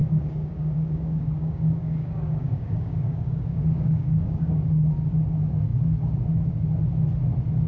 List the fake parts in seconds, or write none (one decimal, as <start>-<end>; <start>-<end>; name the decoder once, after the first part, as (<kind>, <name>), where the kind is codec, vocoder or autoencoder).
0.0-4.6 (codec, DAC)